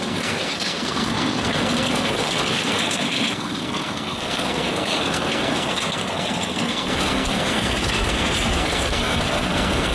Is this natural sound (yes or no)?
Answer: no